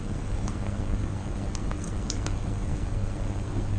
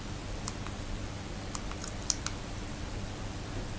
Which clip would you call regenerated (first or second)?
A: first